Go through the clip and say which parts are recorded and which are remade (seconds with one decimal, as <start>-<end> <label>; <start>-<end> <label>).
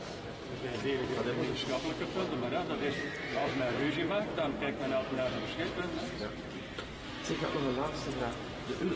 0.0-3.4 recorded; 3.4-3.9 remade; 3.9-9.0 recorded